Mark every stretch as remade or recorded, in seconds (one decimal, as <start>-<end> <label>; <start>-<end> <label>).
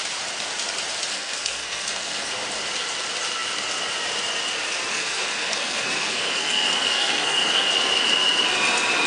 0.0-1.1 recorded; 1.1-2.3 remade; 2.3-4.9 recorded; 4.9-7.7 remade; 7.7-9.1 recorded